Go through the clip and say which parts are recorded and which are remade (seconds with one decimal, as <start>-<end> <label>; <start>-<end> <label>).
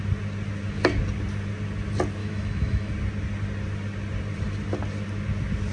0.0-2.2 recorded; 2.2-2.9 remade; 2.9-5.7 recorded